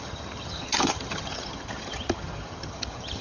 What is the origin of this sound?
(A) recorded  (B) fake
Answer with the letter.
B